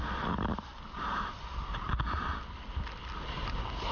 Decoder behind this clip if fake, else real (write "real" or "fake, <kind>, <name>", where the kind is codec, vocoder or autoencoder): real